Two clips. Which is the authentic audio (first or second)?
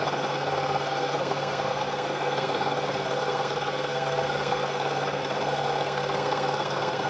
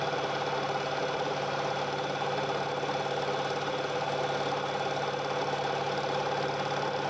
second